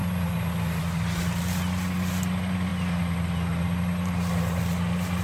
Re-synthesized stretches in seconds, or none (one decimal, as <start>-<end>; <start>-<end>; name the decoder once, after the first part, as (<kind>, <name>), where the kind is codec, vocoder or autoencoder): none

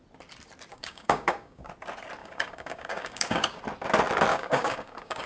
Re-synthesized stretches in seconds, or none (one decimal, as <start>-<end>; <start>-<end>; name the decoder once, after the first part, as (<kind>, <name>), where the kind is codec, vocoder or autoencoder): 0.7-1.7 (codec, DAC); 2.2-3.6; 4.3-5.3

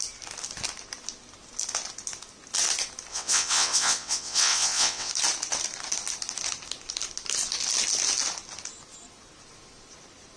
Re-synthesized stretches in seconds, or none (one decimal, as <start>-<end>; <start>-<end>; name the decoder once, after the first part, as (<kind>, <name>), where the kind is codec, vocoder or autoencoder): 3.1-5.1 (vocoder, WaveNeXt)

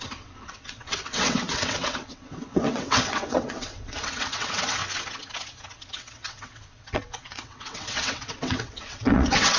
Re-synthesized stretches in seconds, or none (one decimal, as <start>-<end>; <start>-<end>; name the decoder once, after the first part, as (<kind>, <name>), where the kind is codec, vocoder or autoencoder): 0.0-4.8 (vocoder, WaveNeXt); 5.9-9.6

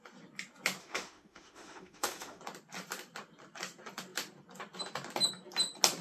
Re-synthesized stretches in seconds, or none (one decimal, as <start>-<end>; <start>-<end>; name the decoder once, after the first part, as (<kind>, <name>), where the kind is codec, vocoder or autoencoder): 0.8-2.4 (autoencoder, DAC-VAE)

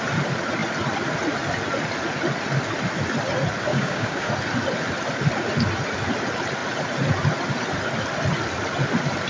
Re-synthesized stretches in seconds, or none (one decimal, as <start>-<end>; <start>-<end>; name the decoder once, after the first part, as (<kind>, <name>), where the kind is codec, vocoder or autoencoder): 3.7-4.3 (codec, DAC)